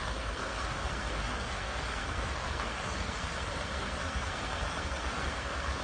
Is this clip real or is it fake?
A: fake